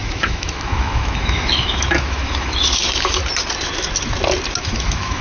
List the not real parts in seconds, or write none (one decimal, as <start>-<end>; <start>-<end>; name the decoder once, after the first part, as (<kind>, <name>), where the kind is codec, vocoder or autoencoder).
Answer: 0.0-3.2 (autoencoder, DAC-VAE); 4.6-5.2